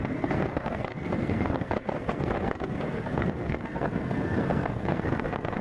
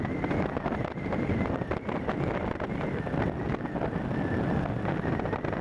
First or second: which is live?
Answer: second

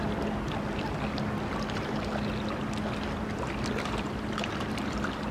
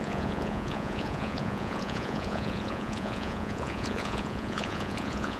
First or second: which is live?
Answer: first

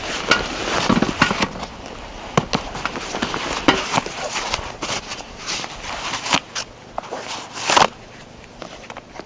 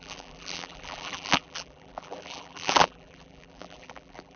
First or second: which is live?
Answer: first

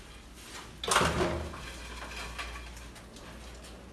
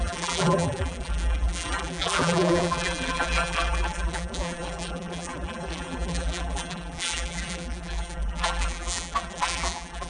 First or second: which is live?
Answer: first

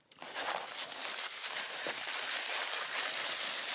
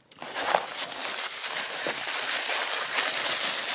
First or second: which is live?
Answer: second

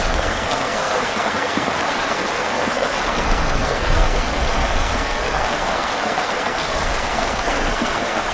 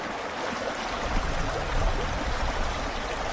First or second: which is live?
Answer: second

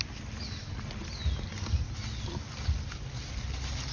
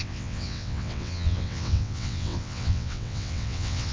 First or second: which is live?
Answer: first